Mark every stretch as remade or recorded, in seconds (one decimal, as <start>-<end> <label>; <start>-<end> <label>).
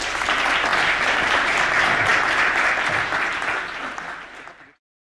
0.0-5.1 recorded